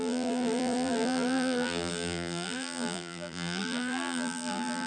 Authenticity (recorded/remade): remade